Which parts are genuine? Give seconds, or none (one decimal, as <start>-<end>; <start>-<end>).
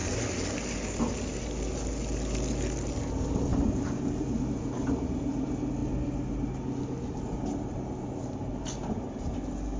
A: 0.0-3.0; 5.8-9.8